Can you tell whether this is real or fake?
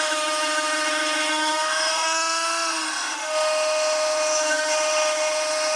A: fake